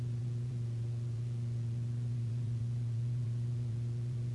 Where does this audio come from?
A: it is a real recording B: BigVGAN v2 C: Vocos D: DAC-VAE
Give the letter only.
C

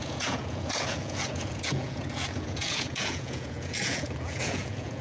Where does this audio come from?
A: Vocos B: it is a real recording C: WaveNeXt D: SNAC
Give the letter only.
A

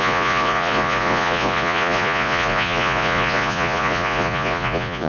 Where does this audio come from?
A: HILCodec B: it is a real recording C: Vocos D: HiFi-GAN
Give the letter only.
C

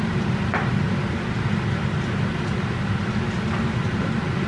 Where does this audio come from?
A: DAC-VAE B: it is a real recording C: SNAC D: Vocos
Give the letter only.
B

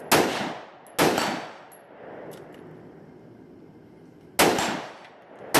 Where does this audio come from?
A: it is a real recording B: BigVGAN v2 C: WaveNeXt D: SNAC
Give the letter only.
A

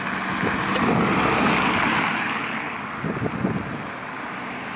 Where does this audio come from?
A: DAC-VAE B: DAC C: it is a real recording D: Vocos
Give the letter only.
C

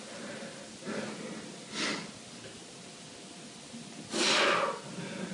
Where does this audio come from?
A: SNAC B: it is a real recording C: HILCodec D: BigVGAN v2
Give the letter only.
B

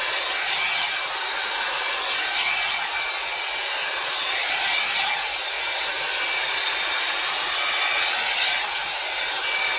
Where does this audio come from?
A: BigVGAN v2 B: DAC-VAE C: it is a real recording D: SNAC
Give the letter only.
C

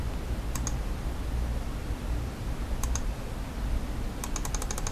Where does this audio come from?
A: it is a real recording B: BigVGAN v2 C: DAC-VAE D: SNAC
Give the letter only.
A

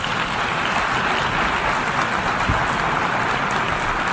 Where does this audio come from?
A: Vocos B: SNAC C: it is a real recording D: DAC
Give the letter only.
C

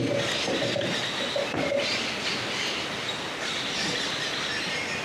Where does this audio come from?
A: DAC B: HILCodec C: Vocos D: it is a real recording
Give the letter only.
D